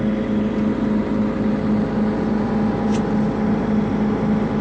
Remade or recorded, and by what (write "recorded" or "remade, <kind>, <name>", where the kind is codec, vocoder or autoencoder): recorded